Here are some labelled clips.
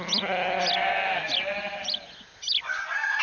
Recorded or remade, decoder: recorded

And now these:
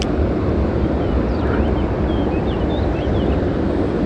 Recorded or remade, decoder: recorded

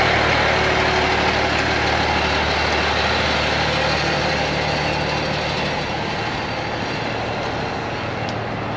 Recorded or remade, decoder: recorded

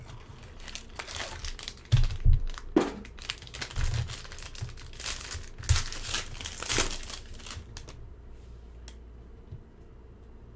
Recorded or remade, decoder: recorded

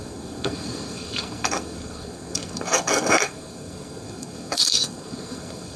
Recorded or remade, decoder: remade, codec, SNAC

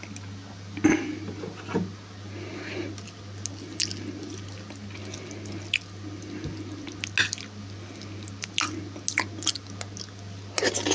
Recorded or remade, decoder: recorded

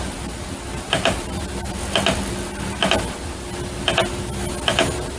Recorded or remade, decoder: recorded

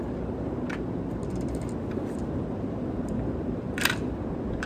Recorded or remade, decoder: recorded